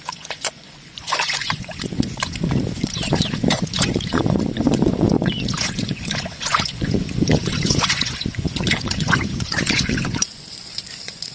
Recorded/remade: remade